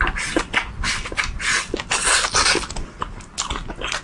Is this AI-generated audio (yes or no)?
no